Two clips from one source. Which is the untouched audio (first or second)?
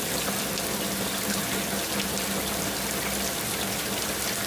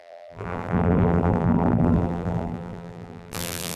first